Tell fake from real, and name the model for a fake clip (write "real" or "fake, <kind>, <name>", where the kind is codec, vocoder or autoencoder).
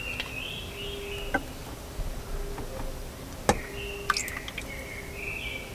real